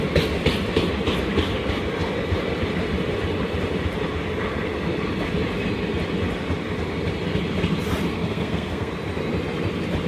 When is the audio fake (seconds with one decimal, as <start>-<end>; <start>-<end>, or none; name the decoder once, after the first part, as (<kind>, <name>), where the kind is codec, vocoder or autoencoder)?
8.1-8.9 (codec, SNAC)